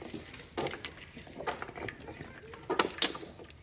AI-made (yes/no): no